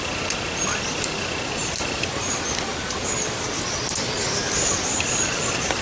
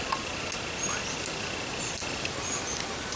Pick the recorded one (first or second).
second